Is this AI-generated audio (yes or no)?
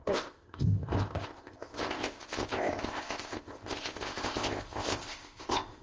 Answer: yes